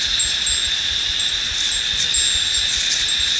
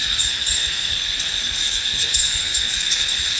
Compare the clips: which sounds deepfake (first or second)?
second